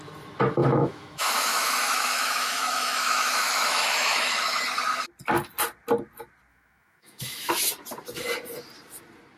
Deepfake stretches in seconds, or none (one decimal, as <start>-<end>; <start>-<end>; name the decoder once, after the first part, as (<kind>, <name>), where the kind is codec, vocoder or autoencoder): 0.6-4.6 (autoencoder, DAC-VAE); 6.5-7.5